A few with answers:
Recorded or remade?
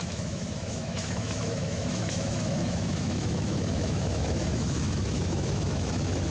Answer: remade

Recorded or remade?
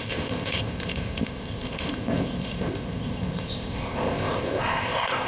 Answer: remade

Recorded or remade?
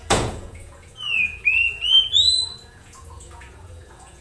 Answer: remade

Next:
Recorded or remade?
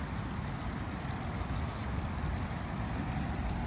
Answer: recorded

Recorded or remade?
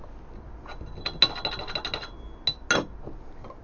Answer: recorded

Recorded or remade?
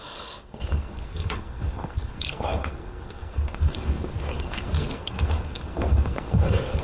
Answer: remade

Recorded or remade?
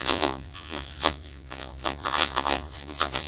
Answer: remade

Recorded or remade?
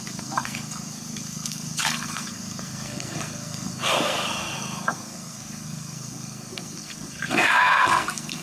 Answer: remade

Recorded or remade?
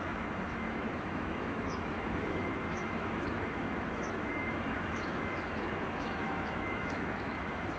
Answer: remade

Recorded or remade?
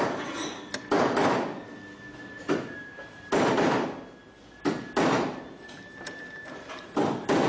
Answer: recorded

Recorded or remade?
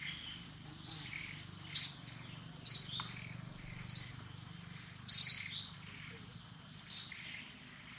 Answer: recorded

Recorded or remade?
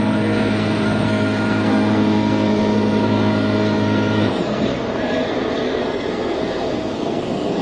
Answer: remade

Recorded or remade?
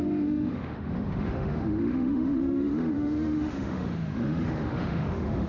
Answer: remade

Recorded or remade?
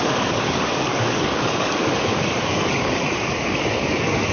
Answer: remade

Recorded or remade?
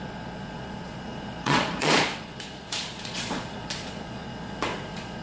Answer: remade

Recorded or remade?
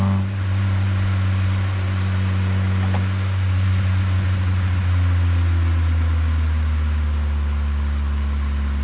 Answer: recorded